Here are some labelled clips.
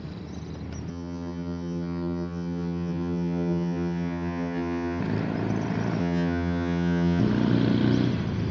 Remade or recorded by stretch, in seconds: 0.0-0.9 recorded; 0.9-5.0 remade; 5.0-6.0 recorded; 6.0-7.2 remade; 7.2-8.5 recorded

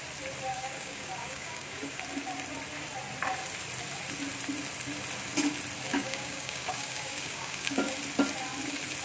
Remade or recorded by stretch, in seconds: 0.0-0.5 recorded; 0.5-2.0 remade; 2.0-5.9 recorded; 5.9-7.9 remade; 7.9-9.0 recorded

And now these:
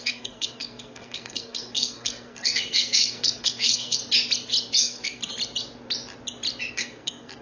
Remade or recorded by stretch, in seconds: 0.0-4.0 remade; 4.0-4.8 recorded; 4.8-5.2 remade; 5.2-6.7 recorded; 6.7-7.4 remade

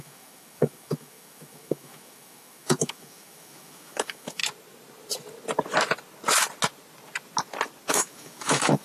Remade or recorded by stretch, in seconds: 0.0-4.4 remade; 4.4-7.9 recorded; 7.9-8.8 remade

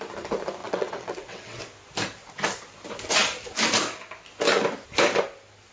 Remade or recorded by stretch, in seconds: 0.0-0.6 recorded; 0.6-1.6 remade; 1.6-5.7 recorded